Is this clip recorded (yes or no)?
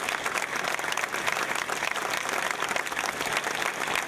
yes